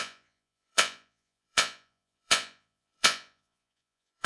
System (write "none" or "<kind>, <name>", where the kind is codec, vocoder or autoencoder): vocoder, Vocos